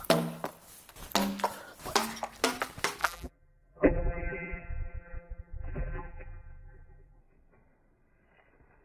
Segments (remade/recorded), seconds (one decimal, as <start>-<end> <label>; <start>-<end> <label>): 0.0-3.0 recorded; 3.0-7.2 remade; 7.2-8.8 recorded